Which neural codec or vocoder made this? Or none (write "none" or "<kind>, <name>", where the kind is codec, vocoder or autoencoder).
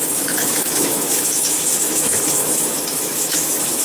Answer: autoencoder, DAC-VAE